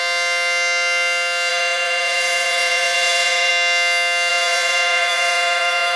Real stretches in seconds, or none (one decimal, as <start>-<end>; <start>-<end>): 0.0-1.5; 3.5-4.3